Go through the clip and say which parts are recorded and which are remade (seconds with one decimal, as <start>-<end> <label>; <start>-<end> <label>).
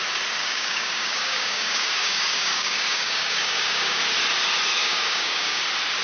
0.0-0.4 recorded; 0.4-4.0 remade; 4.0-4.8 recorded; 4.8-5.6 remade; 5.6-6.0 recorded